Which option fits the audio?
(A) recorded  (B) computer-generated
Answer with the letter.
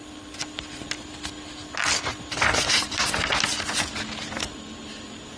A